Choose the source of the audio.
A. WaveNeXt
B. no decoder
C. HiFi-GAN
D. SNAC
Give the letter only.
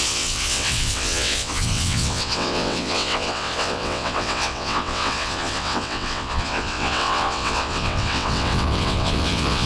A